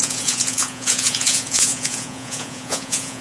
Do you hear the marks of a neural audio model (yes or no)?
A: yes